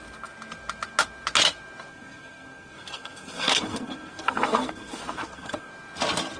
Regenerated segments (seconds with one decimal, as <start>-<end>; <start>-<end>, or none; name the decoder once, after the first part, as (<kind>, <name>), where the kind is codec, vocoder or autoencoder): 1.9-5.7 (codec, SNAC)